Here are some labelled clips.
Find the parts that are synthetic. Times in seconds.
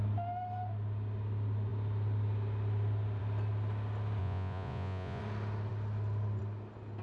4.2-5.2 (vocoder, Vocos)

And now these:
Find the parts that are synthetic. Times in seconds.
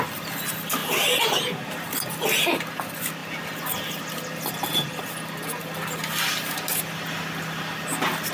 none